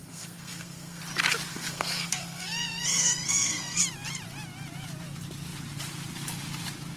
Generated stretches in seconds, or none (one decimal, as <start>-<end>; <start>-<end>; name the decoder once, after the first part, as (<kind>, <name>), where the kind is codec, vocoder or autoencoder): 0.0-1.0 (codec, SNAC); 1.5-3.8